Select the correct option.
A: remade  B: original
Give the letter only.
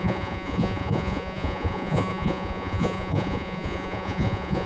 A